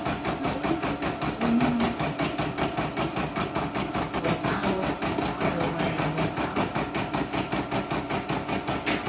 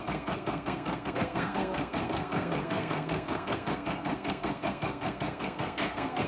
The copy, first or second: second